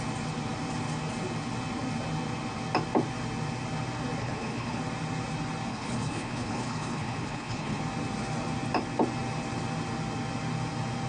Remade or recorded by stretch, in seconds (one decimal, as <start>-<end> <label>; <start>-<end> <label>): 0.0-4.2 recorded; 4.2-4.8 remade; 4.8-5.7 recorded; 5.7-7.8 remade; 7.8-11.1 recorded